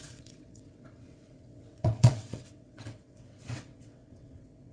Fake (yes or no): yes